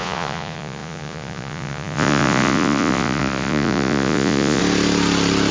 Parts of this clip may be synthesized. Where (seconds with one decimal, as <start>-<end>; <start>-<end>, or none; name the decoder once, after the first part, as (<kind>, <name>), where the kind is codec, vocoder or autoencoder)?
0.0-4.6 (vocoder, Vocos)